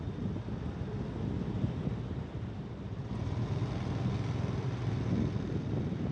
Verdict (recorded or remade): recorded